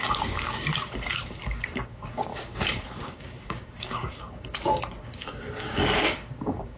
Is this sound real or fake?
fake